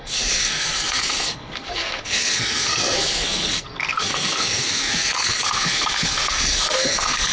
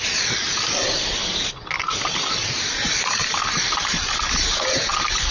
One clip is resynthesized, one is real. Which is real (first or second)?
second